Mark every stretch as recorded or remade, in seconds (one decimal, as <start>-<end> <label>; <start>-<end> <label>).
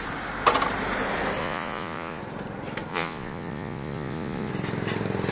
0.0-1.4 recorded; 1.4-2.2 remade; 2.2-2.9 recorded; 2.9-4.5 remade; 4.5-5.3 recorded